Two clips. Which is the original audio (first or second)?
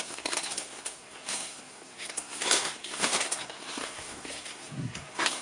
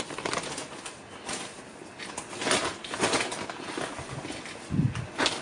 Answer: second